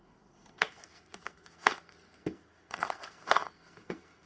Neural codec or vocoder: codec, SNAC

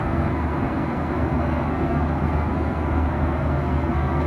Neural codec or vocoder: codec, SNAC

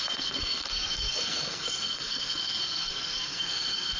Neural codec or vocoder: codec, SNAC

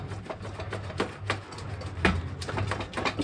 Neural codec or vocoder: none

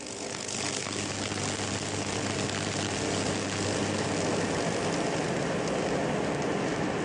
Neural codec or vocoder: none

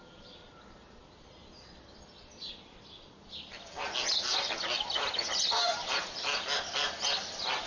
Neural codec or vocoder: none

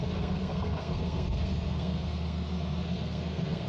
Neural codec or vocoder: codec, SNAC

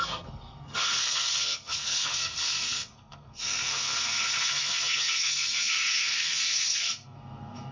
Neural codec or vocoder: codec, SNAC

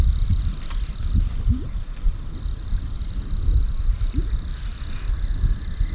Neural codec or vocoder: none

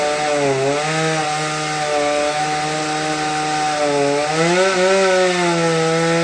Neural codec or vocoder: none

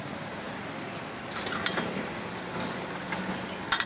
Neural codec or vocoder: none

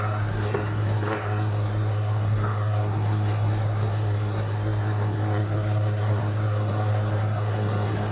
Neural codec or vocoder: codec, SNAC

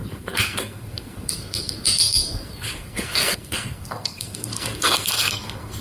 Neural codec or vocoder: codec, SNAC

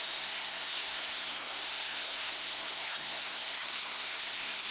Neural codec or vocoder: codec, SNAC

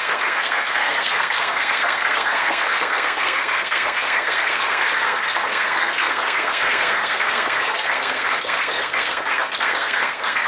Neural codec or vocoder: codec, SNAC